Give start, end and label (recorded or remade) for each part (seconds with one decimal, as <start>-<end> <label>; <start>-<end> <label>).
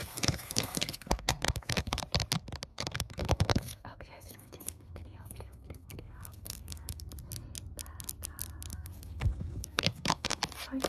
0.0-2.0 remade; 2.0-2.7 recorded; 2.7-7.1 remade; 7.1-8.7 recorded; 8.7-10.4 remade; 10.4-10.9 recorded